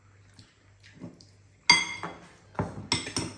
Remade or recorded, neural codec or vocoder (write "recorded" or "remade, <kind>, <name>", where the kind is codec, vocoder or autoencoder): recorded